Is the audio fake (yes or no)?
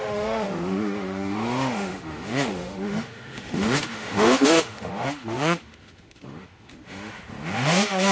yes